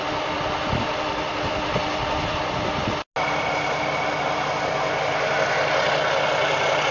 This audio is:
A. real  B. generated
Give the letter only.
A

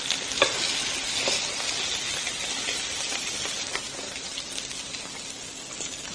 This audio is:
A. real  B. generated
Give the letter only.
A